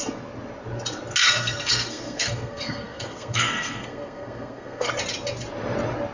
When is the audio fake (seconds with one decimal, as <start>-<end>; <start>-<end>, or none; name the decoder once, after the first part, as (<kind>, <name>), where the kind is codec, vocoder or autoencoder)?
1.2-4.9 (codec, SNAC)